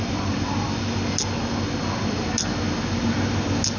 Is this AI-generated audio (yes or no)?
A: no